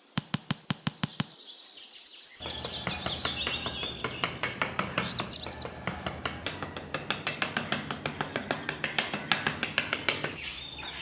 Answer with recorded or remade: recorded